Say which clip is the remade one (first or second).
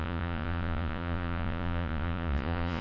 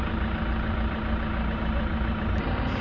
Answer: first